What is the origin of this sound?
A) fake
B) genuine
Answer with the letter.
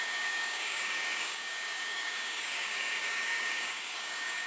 A